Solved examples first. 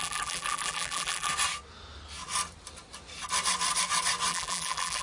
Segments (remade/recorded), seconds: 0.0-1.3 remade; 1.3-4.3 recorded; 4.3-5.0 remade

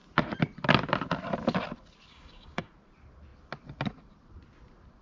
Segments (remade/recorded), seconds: 0.0-2.1 recorded; 2.1-2.7 remade; 2.7-5.0 recorded

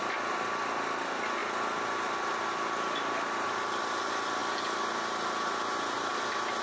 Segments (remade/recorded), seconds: 0.0-6.6 recorded

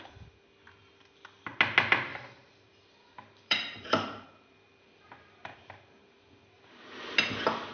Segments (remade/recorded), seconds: 0.0-2.1 recorded; 2.1-6.6 remade; 6.6-7.7 recorded

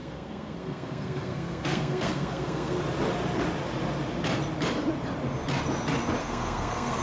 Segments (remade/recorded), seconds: 0.0-2.8 remade; 2.8-6.2 recorded; 6.2-7.0 remade